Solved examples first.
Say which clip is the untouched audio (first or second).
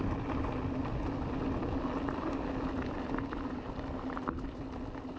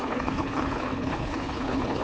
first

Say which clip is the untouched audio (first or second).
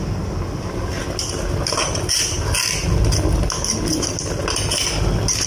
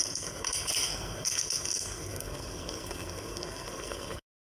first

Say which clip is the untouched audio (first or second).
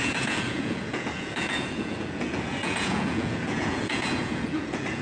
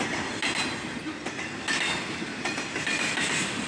second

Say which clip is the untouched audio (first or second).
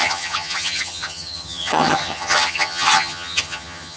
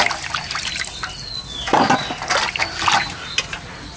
second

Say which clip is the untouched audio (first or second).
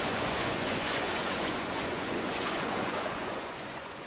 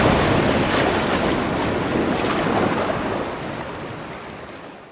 second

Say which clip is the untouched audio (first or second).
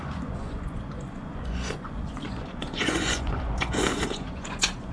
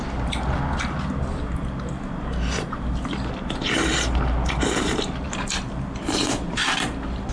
second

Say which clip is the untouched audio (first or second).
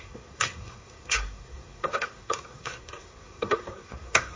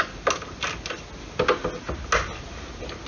second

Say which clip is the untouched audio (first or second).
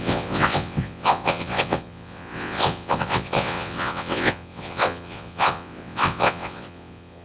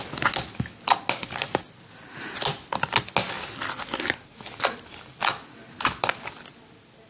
second